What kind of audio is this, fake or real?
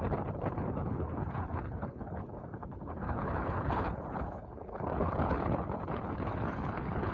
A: fake